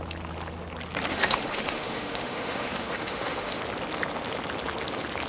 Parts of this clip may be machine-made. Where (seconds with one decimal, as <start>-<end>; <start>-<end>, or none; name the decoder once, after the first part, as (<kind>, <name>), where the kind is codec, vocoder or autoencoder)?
1.1-3.6 (autoencoder, DAC-VAE)